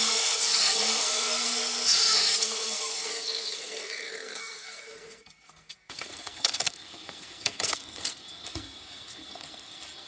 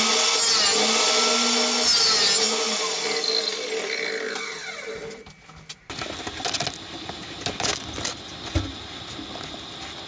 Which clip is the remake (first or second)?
first